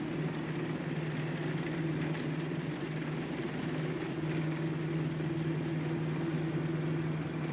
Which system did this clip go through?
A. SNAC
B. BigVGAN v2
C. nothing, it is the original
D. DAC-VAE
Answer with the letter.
C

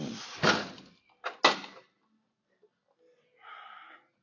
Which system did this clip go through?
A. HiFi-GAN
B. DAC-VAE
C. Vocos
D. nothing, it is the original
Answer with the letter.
D